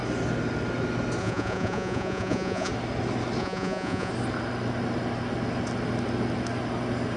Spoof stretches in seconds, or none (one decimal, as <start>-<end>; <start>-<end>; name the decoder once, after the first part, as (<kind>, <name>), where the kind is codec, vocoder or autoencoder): 1.2-2.7 (vocoder, Vocos); 3.4-4.1